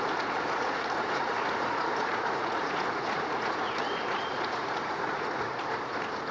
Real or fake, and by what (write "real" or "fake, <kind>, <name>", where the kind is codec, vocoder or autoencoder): fake, vocoder, Vocos